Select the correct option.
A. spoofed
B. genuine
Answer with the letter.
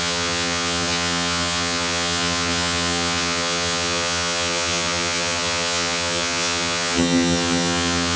A